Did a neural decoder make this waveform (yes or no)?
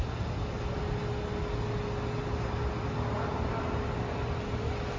no